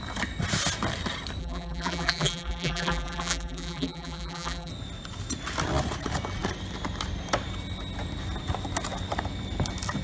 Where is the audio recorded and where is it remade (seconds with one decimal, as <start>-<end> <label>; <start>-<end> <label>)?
0.0-1.4 recorded; 1.4-4.7 remade; 4.7-10.0 recorded